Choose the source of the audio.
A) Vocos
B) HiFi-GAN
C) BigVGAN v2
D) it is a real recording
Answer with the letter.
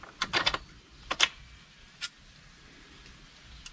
D